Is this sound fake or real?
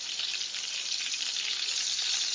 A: fake